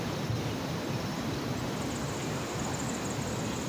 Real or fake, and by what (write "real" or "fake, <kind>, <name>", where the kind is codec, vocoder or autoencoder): real